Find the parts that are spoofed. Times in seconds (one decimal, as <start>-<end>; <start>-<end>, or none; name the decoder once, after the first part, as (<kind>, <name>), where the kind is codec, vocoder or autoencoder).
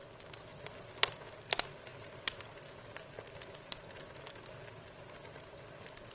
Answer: none